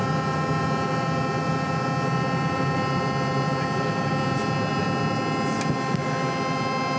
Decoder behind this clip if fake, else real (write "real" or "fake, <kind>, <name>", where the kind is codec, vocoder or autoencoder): real